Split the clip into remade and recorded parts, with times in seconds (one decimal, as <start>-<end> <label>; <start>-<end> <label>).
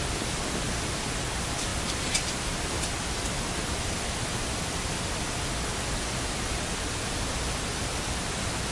0.0-8.7 recorded